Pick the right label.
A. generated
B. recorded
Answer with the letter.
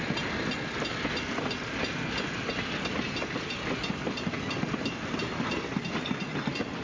B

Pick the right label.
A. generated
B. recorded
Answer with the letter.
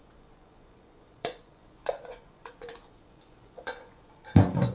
A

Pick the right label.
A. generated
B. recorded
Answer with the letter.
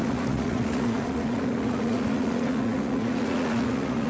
A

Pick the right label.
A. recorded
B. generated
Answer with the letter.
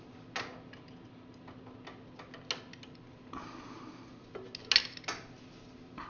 A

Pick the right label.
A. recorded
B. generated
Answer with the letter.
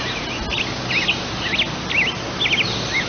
A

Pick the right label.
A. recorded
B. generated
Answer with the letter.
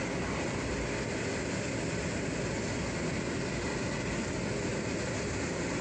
A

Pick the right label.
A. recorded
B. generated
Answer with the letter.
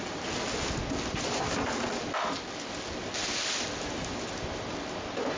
A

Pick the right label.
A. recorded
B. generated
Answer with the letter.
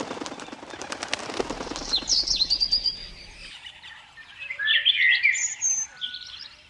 A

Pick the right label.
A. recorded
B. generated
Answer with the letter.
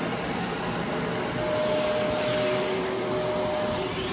A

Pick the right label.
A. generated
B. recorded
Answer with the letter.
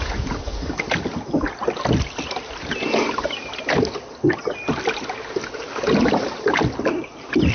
B